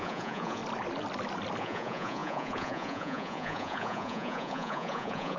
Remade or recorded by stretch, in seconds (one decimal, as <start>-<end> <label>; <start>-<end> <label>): 0.0-0.6 remade; 0.6-1.6 recorded; 1.6-5.4 remade